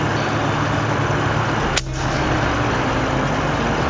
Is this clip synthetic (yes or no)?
no